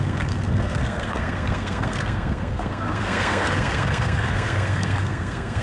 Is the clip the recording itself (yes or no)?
no